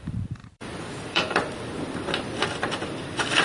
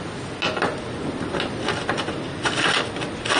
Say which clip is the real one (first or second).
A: second